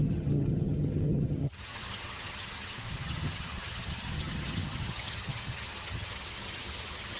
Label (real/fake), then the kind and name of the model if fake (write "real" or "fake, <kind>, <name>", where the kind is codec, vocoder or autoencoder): fake, vocoder, HiFi-GAN